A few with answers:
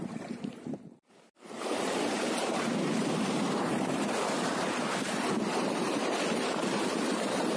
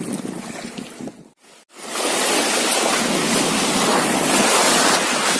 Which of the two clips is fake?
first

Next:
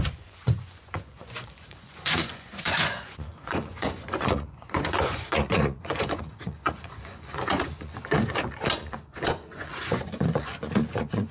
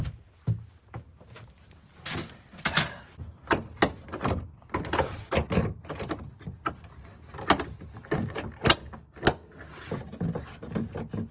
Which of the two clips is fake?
first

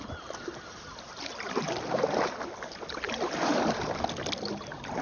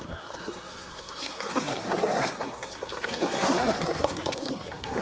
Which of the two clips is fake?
second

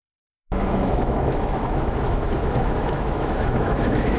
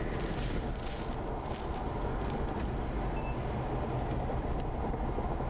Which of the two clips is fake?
first